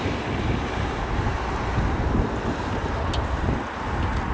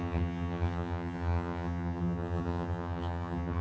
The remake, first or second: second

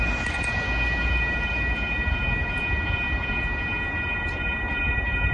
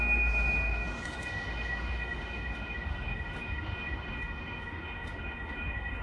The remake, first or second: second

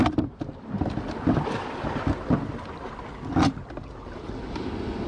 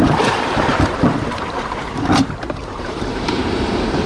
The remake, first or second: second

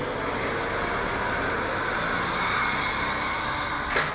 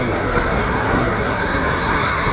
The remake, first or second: second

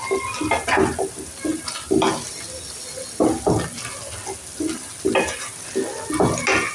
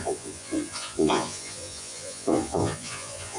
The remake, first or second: second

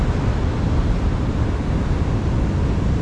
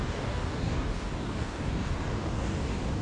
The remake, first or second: second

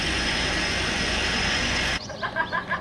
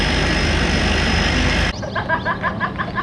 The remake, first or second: first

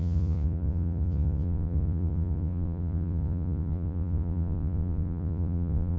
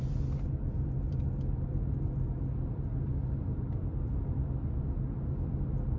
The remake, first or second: first